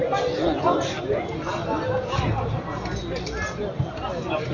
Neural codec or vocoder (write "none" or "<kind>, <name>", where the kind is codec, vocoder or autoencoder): none